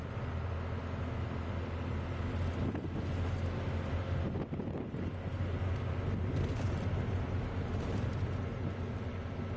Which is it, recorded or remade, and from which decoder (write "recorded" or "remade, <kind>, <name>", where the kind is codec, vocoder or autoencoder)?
recorded